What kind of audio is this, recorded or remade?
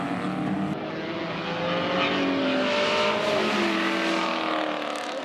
recorded